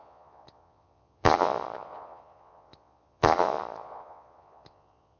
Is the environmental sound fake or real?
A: fake